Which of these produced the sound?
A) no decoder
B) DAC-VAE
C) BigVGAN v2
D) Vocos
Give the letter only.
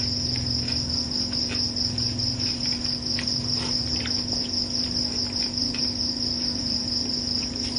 A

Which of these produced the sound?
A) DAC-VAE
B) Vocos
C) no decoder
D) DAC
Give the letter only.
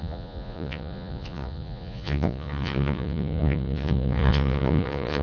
B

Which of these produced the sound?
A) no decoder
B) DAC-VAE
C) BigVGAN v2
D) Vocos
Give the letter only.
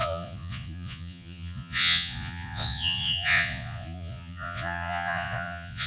D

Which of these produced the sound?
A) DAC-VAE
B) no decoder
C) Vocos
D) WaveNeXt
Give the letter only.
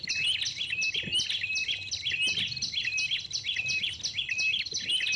B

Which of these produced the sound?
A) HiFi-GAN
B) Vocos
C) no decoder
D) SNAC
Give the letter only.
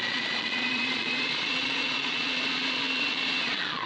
B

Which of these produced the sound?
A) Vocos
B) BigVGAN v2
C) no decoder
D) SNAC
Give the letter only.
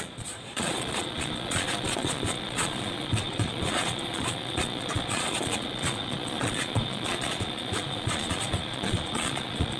A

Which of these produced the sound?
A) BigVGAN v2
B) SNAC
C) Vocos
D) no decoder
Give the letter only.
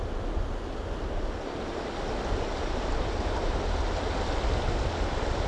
D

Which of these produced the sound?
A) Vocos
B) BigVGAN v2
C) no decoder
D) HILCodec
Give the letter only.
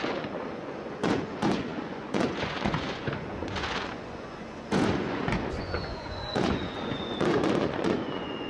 A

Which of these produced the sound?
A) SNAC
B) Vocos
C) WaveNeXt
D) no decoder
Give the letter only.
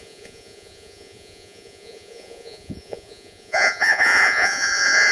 B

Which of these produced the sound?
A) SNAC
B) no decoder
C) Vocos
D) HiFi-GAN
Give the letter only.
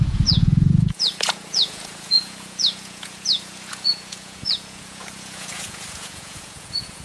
C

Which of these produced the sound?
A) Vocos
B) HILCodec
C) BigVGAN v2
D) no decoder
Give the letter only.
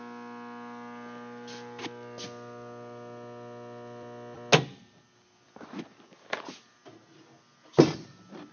D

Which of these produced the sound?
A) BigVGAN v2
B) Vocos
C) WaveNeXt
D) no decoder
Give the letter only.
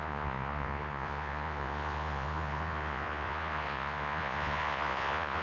B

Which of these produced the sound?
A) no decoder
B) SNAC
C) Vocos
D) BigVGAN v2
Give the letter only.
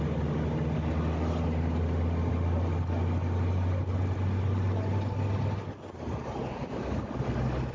A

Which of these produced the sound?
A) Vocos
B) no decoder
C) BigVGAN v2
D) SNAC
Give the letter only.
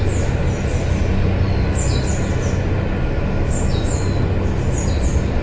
B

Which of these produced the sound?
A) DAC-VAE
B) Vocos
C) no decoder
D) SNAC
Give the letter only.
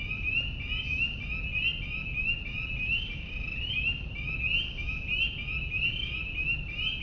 C